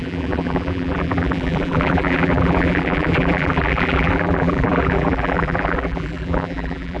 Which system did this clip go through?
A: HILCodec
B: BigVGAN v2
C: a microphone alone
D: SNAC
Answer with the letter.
B